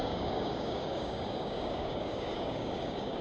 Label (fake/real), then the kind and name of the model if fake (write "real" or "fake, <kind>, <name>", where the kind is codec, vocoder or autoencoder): fake, codec, DAC